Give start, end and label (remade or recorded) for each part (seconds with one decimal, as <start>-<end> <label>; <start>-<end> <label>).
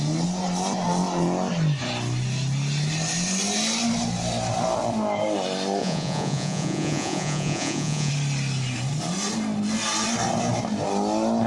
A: 0.0-5.8 recorded; 5.8-8.1 remade; 8.1-11.5 recorded